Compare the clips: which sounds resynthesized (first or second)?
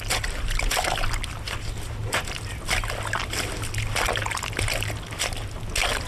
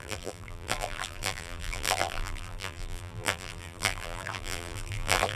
second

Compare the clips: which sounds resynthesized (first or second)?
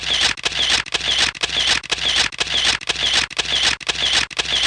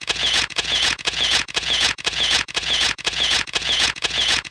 second